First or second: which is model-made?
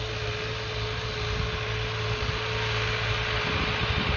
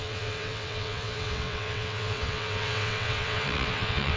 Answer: second